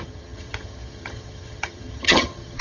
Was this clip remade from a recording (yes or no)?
yes